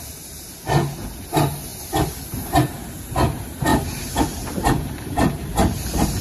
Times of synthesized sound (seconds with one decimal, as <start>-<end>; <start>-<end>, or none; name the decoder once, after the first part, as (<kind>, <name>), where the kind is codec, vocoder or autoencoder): 3.7-5.5 (vocoder, BigVGAN v2)